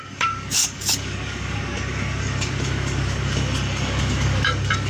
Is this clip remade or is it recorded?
remade